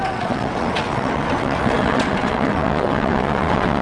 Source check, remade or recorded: remade